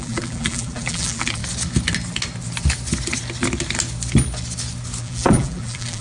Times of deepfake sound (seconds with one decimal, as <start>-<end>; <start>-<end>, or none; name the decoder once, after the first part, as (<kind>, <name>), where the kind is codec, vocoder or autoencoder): 0.0-1.4 (vocoder, BigVGAN v2); 5.0-6.0